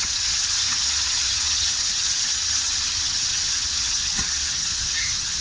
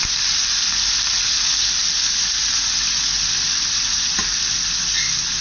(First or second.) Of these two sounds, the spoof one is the first